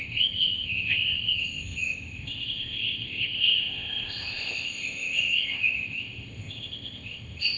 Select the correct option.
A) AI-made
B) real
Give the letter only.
A